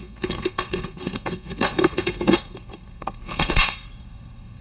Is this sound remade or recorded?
remade